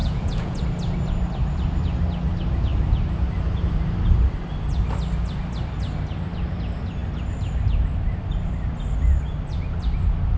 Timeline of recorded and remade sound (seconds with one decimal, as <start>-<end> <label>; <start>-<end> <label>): 0.0-0.6 remade; 0.6-10.4 recorded